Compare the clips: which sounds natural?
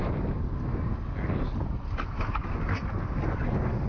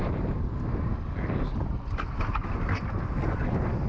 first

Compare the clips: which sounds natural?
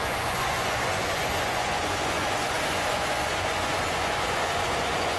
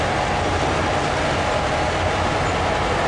second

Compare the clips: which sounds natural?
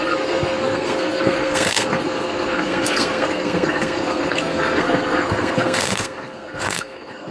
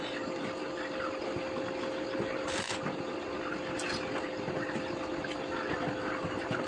second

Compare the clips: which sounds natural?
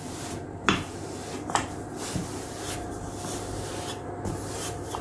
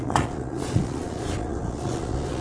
first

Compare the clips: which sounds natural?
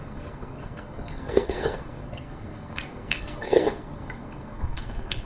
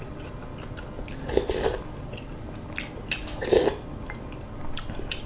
second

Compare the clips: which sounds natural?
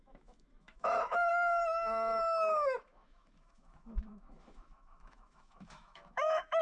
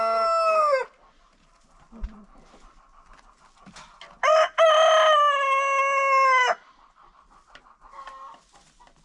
second